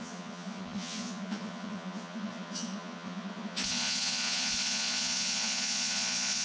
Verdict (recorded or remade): remade